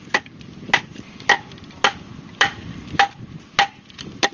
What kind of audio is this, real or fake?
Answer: real